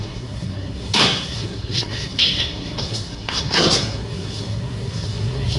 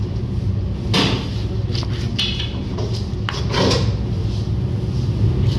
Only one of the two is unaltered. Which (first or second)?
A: second